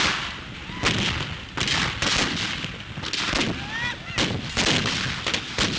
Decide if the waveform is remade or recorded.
recorded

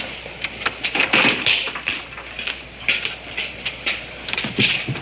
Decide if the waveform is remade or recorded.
recorded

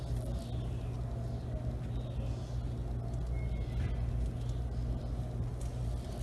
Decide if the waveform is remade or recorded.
recorded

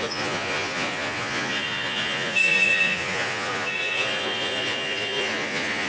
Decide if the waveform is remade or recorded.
remade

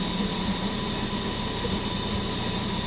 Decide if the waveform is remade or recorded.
recorded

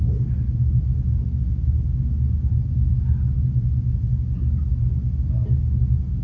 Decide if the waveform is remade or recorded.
recorded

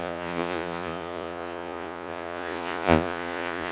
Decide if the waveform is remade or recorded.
remade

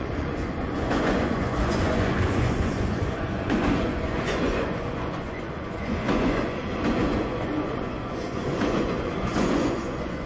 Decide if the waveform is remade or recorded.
remade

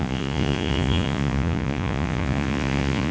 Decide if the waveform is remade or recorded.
remade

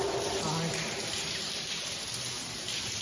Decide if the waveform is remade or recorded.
recorded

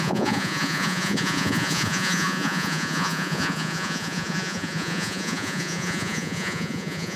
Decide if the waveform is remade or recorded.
remade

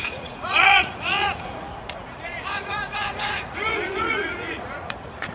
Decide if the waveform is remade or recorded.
remade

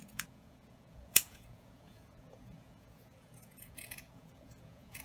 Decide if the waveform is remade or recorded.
remade